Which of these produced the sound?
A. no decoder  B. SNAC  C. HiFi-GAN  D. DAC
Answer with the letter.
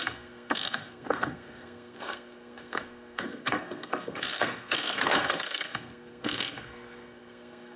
B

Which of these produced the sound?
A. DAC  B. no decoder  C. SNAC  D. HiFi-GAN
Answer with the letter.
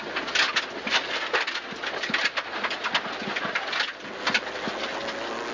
B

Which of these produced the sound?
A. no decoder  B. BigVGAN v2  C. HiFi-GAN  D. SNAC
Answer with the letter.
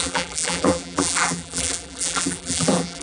B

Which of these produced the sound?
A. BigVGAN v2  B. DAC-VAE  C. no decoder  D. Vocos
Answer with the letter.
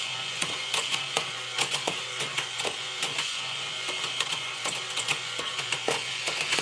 D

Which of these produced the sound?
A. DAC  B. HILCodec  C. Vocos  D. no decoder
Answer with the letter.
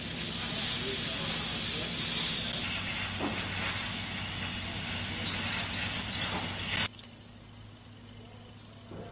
D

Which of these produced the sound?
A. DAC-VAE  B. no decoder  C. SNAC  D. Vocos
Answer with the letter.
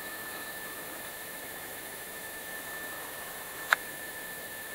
A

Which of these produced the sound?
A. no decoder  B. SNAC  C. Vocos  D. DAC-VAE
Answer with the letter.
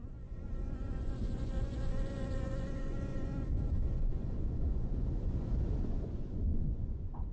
C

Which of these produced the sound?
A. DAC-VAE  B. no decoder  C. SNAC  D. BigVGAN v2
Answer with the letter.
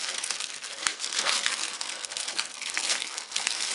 C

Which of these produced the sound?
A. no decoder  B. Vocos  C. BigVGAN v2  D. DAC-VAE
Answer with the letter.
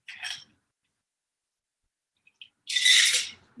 A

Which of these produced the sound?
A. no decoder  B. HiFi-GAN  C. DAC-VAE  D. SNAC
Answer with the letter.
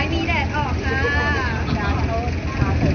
A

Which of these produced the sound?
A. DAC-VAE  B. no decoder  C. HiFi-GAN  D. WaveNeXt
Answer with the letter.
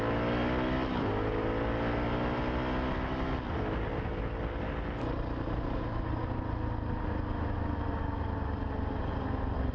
B